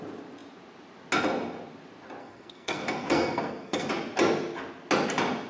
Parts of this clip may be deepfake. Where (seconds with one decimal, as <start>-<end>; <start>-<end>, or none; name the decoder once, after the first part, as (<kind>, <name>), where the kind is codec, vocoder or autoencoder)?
2.2-3.9 (codec, SNAC)